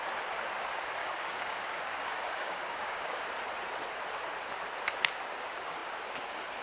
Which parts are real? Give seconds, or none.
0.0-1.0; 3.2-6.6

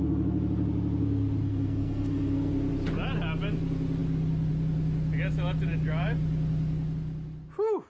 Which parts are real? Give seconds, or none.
0.0-1.4; 2.5-7.9

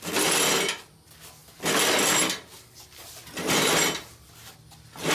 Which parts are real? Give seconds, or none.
0.0-5.1

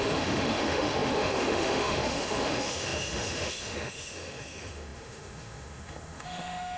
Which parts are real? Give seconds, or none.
none

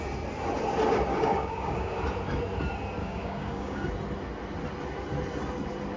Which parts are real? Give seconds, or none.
0.0-1.1; 2.0-3.0; 3.9-6.0

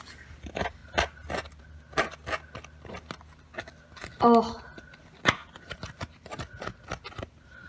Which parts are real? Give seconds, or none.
0.0-7.7

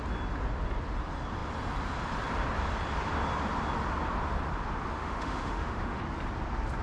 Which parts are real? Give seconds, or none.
0.0-5.0; 6.0-6.8